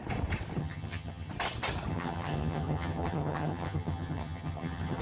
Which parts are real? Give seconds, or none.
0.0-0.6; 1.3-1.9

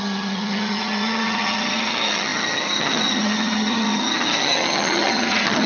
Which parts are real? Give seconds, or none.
none

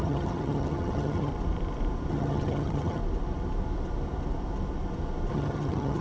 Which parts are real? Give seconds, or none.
1.3-2.1; 3.0-5.3

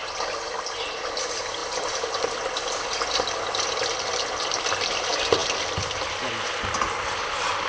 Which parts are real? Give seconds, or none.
0.0-7.7

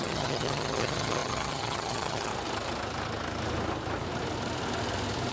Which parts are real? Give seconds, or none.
2.3-5.3